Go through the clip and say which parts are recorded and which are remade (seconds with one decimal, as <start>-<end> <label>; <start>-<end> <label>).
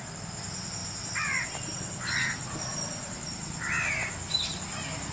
0.0-5.1 recorded